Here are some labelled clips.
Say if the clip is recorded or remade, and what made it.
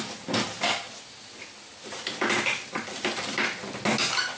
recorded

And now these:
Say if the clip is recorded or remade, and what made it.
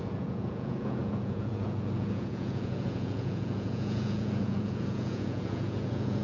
remade, vocoder, Vocos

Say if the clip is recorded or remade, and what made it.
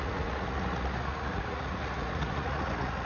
remade, vocoder, Vocos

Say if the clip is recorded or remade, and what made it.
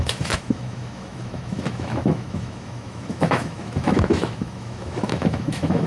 remade, autoencoder, DAC-VAE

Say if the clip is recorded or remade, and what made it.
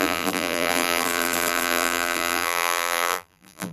remade, vocoder, BigVGAN v2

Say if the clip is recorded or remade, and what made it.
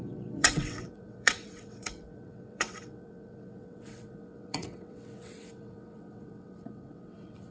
remade, vocoder, WaveNeXt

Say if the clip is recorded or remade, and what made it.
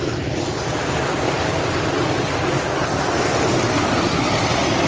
recorded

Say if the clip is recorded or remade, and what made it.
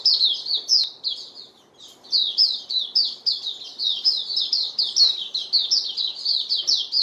recorded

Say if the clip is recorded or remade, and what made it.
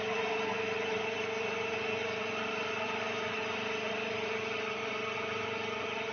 remade, vocoder, BigVGAN v2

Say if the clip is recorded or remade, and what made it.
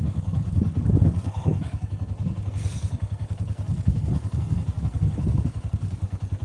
remade, codec, SNAC